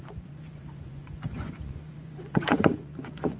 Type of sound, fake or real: fake